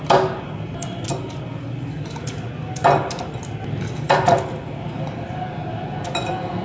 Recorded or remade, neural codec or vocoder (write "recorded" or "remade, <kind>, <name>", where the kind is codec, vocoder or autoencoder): recorded